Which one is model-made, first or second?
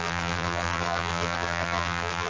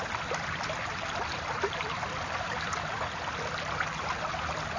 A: first